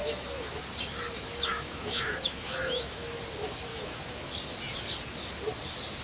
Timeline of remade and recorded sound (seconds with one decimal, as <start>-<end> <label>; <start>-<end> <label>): 0.0-0.6 remade; 0.6-1.5 recorded; 1.5-3.2 remade; 3.2-3.7 recorded; 3.7-4.3 remade; 4.3-6.0 recorded